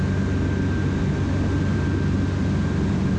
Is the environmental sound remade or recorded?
recorded